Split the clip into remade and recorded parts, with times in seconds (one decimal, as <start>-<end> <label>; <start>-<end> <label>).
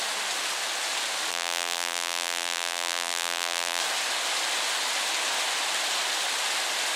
0.0-1.3 recorded; 1.3-3.8 remade; 3.8-7.0 recorded